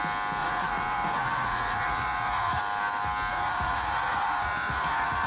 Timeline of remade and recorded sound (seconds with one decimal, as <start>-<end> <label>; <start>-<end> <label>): 0.0-0.4 recorded; 0.4-2.6 remade; 2.6-3.3 recorded; 3.3-5.3 remade